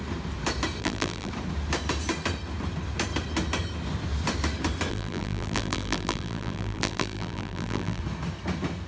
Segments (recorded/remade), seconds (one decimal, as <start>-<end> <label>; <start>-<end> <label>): 0.0-0.8 recorded; 0.8-1.3 remade; 1.3-4.9 recorded; 4.9-8.0 remade; 8.0-8.9 recorded